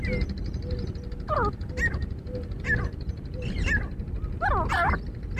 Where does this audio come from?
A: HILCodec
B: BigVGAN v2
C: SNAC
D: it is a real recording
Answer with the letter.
D